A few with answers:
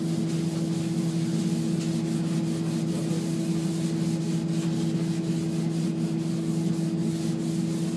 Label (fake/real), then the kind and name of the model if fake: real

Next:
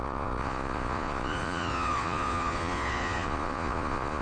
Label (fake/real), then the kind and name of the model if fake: fake, vocoder, Vocos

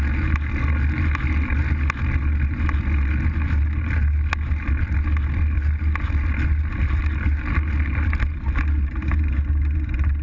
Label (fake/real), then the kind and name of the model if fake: real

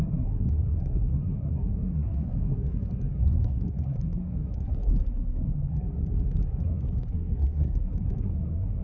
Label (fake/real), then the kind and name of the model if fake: fake, codec, SNAC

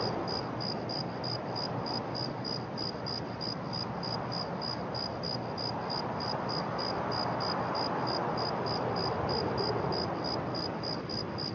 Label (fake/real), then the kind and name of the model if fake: real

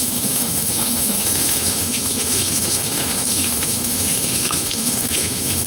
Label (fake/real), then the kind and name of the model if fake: fake, autoencoder, DAC-VAE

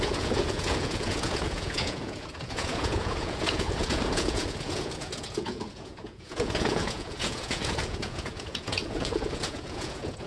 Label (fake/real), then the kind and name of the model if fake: fake, vocoder, Vocos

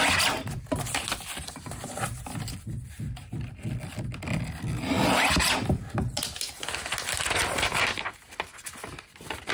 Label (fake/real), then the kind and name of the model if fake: real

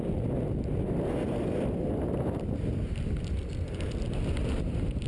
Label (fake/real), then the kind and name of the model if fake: real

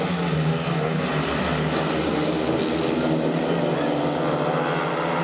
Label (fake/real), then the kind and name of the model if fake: real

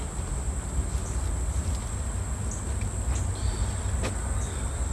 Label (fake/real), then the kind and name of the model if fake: real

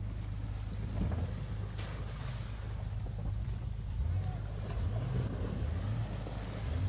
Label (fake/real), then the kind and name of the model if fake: real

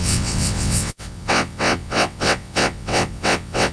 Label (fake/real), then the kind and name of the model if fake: fake, vocoder, WaveNeXt